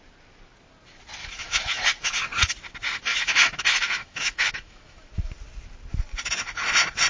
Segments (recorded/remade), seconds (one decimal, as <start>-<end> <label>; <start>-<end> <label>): 0.0-1.2 recorded; 1.2-2.0 remade; 2.0-3.1 recorded; 3.1-5.1 remade; 5.1-7.1 recorded